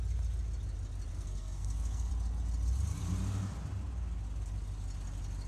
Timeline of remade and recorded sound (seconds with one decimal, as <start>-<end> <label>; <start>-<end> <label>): 0.0-1.1 recorded; 1.1-2.1 remade; 2.1-5.5 recorded